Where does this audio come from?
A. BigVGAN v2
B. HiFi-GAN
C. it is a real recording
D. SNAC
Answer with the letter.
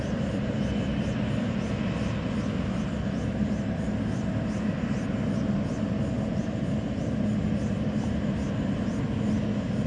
C